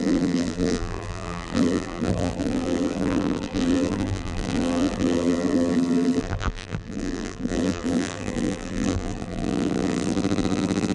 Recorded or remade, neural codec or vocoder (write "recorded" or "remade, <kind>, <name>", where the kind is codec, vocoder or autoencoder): remade, vocoder, BigVGAN v2